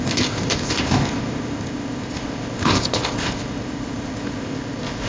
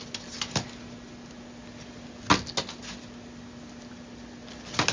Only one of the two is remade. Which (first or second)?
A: first